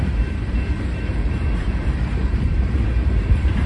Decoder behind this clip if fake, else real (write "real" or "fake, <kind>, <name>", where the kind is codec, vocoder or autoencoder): fake, vocoder, BigVGAN v2